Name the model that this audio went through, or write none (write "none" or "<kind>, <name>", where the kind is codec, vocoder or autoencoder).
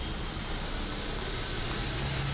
none